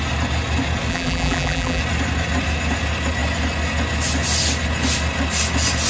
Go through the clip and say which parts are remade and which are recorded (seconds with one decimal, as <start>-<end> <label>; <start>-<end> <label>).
0.0-0.9 recorded; 0.9-1.8 remade; 1.8-5.9 recorded